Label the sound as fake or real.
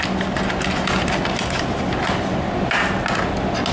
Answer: real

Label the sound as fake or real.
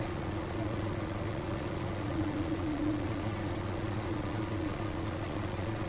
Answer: fake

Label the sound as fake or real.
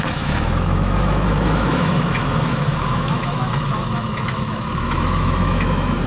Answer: fake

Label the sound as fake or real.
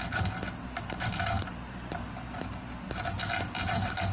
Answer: real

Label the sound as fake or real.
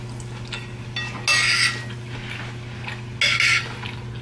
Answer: real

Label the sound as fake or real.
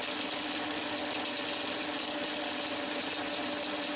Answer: real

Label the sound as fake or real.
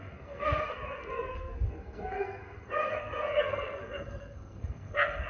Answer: fake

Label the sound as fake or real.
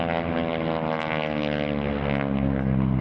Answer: real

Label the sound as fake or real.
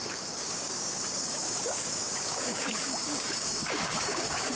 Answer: fake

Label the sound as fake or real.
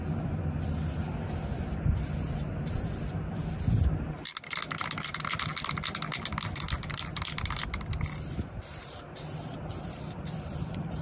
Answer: fake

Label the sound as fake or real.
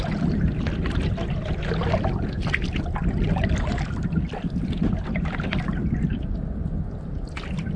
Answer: real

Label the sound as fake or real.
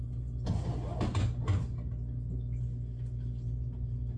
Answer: real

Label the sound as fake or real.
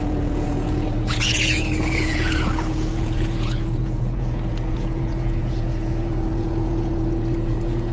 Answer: fake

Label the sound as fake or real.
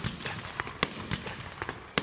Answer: real